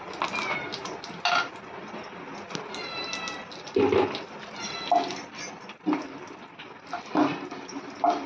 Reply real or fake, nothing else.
real